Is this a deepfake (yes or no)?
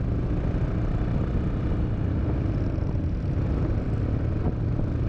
no